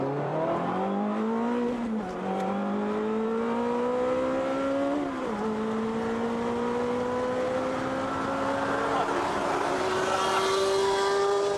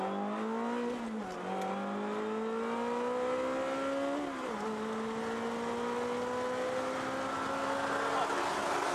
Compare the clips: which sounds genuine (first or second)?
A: second